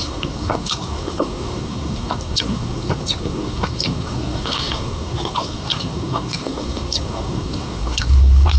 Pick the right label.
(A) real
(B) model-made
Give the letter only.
B